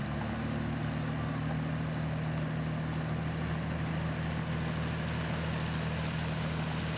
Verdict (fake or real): real